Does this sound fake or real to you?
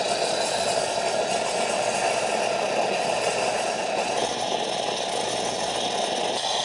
real